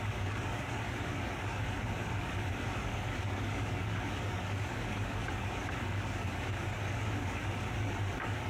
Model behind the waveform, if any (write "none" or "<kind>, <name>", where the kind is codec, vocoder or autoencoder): codec, DAC